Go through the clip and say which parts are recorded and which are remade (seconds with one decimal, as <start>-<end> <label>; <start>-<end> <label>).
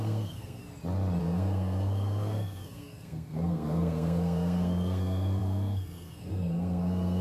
0.0-0.6 remade; 0.6-1.2 recorded; 1.2-7.2 remade